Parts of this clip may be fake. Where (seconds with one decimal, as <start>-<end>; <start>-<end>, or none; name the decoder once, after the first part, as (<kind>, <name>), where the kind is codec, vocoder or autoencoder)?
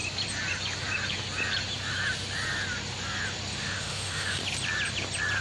3.6-4.4 (autoencoder, DAC-VAE)